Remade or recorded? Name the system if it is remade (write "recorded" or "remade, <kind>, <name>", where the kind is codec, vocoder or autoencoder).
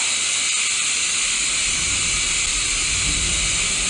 recorded